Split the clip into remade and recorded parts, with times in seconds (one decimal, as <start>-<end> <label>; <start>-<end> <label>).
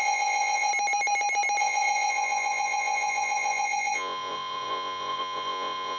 0.0-0.7 remade; 0.7-1.6 recorded; 1.6-6.0 remade